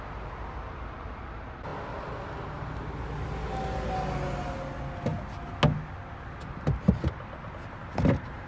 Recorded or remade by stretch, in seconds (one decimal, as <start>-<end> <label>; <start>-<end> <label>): 0.0-8.5 recorded